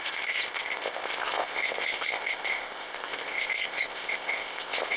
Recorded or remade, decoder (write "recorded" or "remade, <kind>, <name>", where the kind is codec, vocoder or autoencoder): remade, codec, ZipCodec